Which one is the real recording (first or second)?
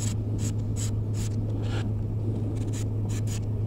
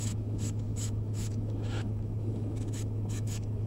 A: first